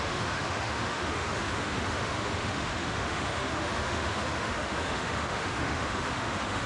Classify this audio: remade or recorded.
remade